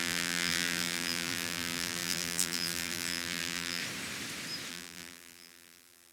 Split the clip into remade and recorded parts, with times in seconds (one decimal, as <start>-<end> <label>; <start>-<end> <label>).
0.0-3.8 remade; 3.8-4.7 recorded; 4.7-6.1 remade